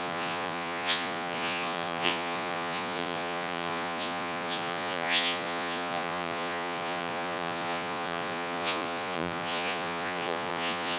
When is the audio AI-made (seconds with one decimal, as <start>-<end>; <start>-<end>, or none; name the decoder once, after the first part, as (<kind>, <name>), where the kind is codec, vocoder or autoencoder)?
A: 0.0-11.0 (vocoder, Vocos)